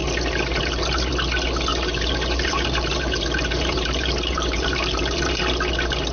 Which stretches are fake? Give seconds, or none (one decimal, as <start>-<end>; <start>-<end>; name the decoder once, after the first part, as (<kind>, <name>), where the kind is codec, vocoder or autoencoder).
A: 0.0-1.1 (vocoder, BigVGAN v2); 1.7-5.4